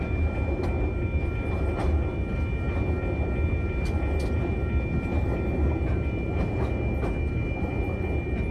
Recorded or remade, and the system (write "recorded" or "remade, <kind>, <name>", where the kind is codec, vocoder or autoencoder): recorded